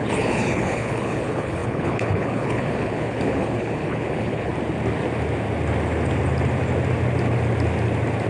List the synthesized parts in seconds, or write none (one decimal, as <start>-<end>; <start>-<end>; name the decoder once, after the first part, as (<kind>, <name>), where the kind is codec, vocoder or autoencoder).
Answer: 0.0-4.5 (codec, HILCodec)